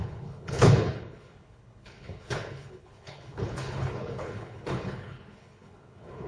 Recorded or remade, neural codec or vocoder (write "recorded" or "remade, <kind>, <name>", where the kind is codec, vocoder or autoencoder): remade, codec, HILCodec